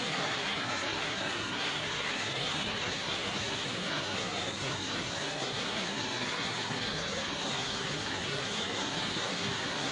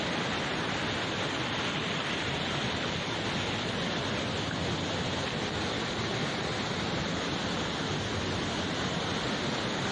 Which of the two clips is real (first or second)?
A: second